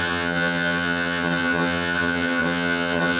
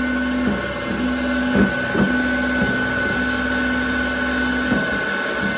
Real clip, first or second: second